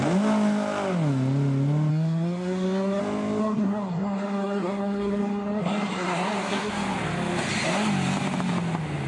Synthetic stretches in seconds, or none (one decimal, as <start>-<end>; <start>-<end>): 1.9-3.0; 3.4-6.7

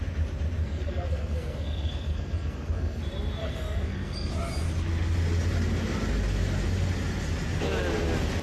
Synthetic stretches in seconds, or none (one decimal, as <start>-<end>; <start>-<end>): 0.6-3.0; 3.4-4.3

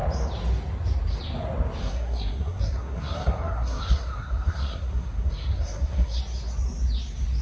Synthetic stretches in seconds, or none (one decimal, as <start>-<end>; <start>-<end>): 1.8-6.2

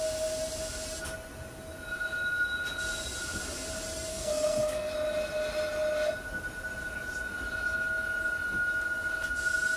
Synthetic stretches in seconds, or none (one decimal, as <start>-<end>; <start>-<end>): 4.1-4.9

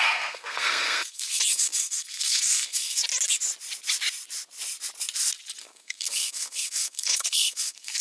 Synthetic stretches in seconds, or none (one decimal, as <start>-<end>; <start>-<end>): 0.0-3.0; 5.6-8.0

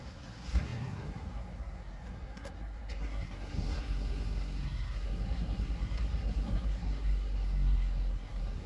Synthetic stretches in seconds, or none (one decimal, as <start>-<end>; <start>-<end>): 0.0-8.7